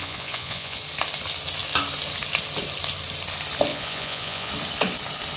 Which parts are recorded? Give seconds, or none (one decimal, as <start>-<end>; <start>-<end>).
0.8-3.7; 4.5-5.4